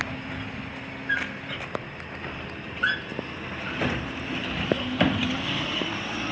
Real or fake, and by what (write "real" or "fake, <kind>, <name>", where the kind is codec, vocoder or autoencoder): real